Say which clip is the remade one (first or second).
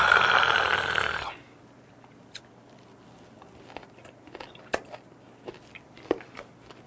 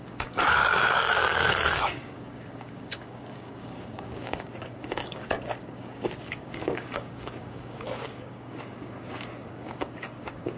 second